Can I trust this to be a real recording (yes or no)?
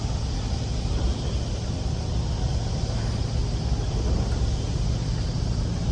yes